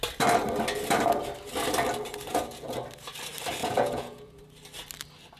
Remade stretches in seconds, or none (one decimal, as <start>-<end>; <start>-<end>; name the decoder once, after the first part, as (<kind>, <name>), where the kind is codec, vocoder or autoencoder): 3.6-4.4 (vocoder, Vocos)